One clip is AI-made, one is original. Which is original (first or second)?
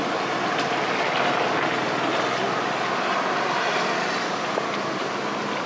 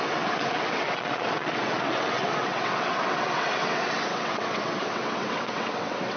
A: first